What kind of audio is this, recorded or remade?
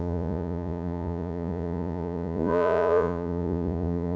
remade